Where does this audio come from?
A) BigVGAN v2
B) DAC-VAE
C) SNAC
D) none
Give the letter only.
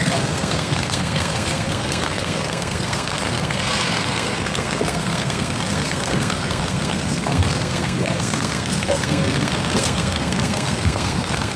C